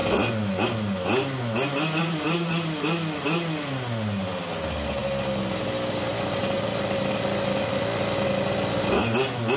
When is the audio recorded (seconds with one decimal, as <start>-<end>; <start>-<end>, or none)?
0.0-2.0; 2.5-9.6